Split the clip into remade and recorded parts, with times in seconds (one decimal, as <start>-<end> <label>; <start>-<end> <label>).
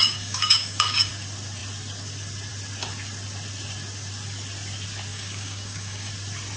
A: 0.0-1.1 remade; 1.1-5.1 recorded; 5.1-6.1 remade; 6.1-6.6 recorded